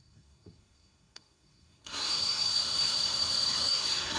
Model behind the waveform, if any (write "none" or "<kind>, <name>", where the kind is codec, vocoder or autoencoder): codec, SNAC